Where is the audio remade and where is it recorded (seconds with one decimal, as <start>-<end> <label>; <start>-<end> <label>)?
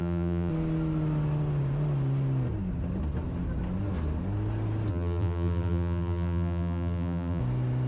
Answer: 0.0-0.5 remade; 0.5-4.9 recorded; 4.9-7.4 remade; 7.4-7.9 recorded